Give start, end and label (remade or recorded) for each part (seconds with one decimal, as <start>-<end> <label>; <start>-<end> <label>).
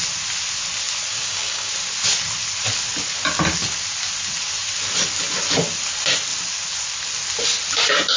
0.0-1.1 recorded; 1.1-1.7 remade; 1.7-8.2 recorded